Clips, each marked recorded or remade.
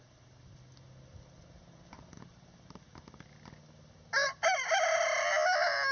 recorded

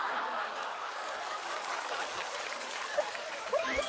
remade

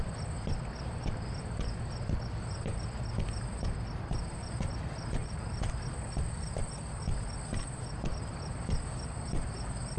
recorded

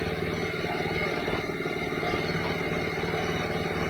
recorded